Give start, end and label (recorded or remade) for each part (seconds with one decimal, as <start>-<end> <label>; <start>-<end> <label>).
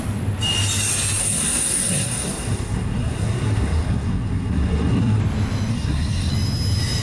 0.0-1.2 recorded; 1.2-5.2 remade; 5.2-5.7 recorded; 5.7-6.3 remade; 6.3-7.0 recorded